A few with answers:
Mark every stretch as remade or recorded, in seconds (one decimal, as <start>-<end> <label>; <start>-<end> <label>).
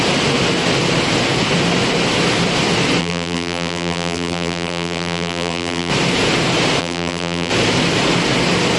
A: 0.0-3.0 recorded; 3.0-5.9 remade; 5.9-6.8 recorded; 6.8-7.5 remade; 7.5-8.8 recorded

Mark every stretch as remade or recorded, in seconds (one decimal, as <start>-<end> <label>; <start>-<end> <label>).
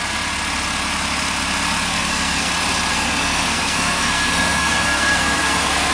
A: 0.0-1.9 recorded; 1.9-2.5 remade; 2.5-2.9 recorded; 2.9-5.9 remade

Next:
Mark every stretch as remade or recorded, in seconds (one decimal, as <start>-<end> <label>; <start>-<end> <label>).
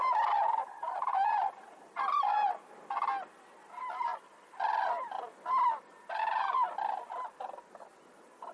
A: 0.0-8.5 recorded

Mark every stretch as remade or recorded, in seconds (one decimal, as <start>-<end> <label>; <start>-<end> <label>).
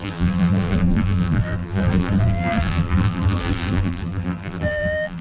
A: 0.0-5.2 remade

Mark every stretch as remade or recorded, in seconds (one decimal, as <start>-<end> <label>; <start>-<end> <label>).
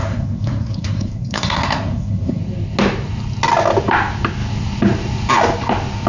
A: 0.0-2.4 remade; 2.4-6.1 recorded